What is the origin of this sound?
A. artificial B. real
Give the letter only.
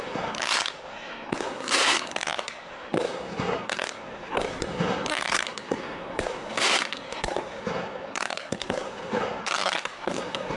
A